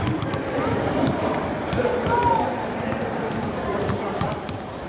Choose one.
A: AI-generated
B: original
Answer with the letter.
A